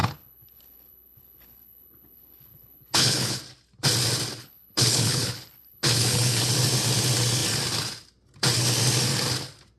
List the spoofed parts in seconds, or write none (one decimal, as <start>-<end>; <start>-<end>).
0.0-3.4; 4.4-6.5